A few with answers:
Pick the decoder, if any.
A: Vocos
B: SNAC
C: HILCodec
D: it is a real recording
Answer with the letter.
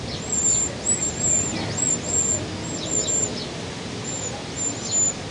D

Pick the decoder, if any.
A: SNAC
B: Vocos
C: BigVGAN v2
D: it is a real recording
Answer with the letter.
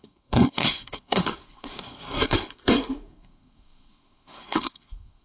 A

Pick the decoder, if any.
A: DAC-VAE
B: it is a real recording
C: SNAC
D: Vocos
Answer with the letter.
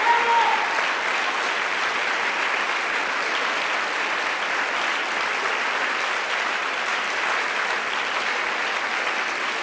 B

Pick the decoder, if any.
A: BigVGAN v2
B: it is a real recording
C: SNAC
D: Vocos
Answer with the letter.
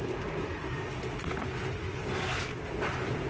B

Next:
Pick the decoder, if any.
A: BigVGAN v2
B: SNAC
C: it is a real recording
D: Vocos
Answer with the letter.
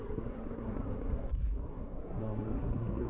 B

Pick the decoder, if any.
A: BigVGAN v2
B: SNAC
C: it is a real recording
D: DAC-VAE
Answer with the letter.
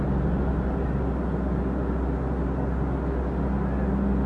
C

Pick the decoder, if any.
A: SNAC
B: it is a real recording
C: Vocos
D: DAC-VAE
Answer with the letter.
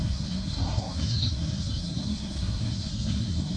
A